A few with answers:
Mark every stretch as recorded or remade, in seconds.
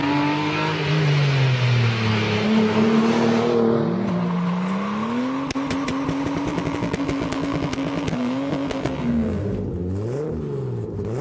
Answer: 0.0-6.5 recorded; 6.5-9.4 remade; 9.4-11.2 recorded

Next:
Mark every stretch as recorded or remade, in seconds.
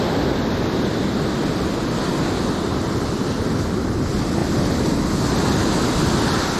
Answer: 0.0-6.6 recorded